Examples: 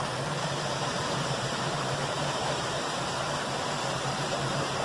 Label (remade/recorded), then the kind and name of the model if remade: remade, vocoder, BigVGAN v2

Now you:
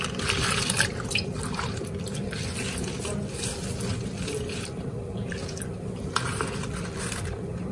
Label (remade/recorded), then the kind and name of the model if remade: recorded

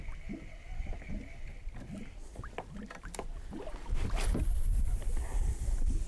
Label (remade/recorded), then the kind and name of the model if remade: recorded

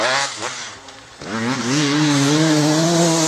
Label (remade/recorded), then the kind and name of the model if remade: recorded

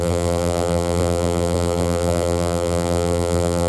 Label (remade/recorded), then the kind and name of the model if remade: remade, vocoder, BigVGAN v2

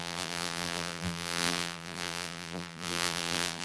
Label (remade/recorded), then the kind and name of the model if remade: remade, vocoder, BigVGAN v2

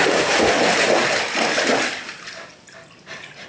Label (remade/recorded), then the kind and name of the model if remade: recorded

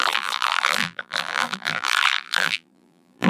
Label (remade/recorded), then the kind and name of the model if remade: remade, vocoder, BigVGAN v2